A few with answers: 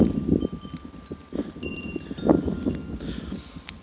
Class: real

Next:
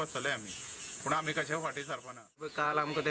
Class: fake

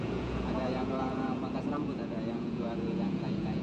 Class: fake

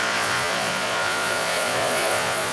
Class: fake